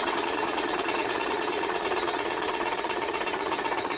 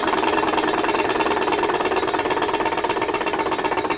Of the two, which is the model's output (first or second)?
first